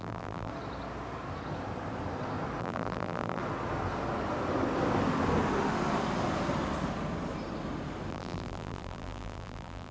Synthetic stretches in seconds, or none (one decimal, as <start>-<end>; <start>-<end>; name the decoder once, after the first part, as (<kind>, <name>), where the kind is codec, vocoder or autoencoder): 0.0-0.5 (vocoder, BigVGAN v2); 2.6-3.4; 8.1-9.9